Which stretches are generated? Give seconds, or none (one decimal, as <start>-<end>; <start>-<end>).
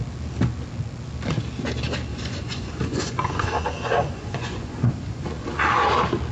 2.1-5.7